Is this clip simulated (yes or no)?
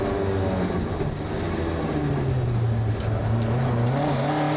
no